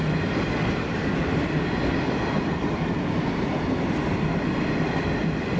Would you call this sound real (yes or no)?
yes